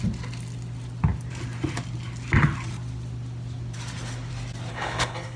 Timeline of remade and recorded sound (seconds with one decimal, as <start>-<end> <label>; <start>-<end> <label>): 0.0-4.7 recorded; 4.7-5.4 remade